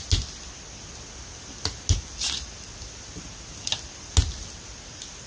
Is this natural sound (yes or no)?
yes